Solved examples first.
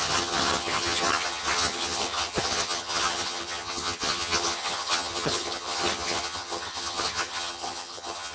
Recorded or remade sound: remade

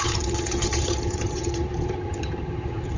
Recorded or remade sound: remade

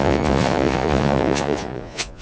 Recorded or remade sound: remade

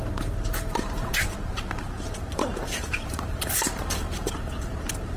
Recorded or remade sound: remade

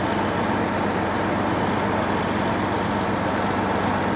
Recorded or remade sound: recorded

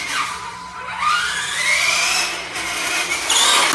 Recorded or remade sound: recorded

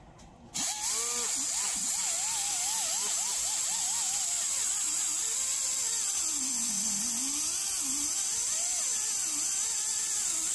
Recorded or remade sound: recorded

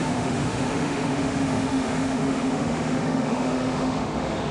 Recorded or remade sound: remade